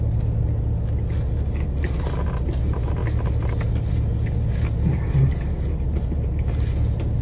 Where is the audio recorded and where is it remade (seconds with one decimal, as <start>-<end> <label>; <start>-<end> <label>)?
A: 0.0-7.2 recorded

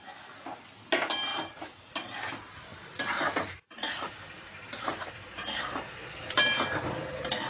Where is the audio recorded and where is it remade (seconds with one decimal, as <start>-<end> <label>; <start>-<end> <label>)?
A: 0.0-1.3 recorded; 1.3-1.9 remade; 1.9-2.7 recorded; 2.7-7.5 remade

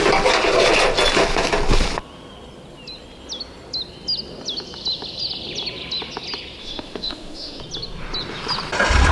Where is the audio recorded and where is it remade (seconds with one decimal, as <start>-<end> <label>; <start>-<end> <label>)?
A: 0.0-6.6 recorded; 6.6-7.6 remade; 7.6-9.1 recorded

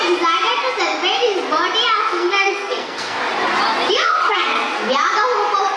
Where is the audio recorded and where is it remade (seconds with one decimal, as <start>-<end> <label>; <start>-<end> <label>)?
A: 0.0-2.0 recorded; 2.0-3.2 remade; 3.2-4.0 recorded; 4.0-4.9 remade; 4.9-5.8 recorded